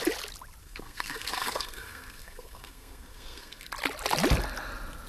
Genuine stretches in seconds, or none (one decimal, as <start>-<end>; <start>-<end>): 0.0-0.6; 3.7-5.1